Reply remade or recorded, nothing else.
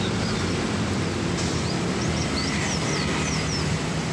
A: recorded